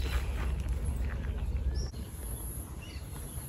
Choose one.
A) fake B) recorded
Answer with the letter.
B